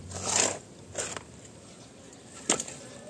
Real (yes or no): yes